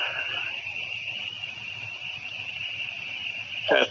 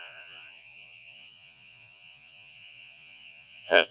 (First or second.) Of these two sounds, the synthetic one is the second